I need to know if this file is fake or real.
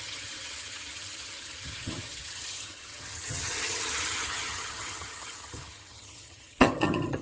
fake